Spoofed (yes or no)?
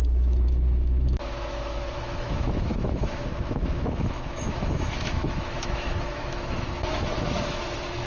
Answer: yes